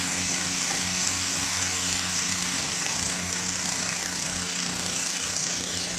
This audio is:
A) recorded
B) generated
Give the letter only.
B